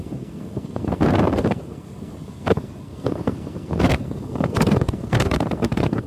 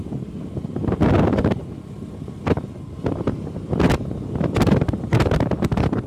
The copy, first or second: first